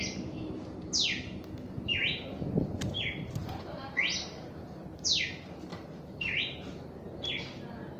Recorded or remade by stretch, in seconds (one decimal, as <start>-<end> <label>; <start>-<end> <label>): 0.0-3.4 recorded; 3.4-5.2 remade; 5.2-5.7 recorded; 5.7-6.9 remade; 6.9-8.0 recorded